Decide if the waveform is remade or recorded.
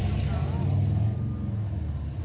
recorded